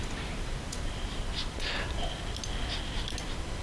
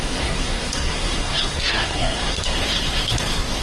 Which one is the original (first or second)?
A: first